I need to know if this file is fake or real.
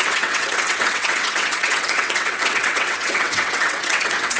fake